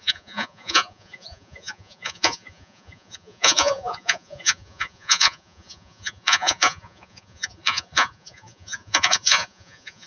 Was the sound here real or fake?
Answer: fake